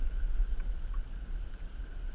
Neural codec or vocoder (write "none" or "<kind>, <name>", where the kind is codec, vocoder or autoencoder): vocoder, BigVGAN v2